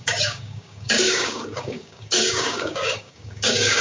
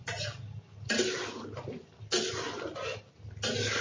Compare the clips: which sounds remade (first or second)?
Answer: first